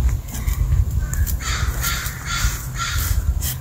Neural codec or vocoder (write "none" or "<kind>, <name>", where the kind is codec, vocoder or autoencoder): none